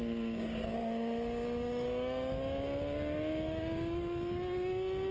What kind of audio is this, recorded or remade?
remade